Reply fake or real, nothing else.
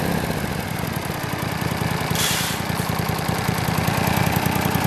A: fake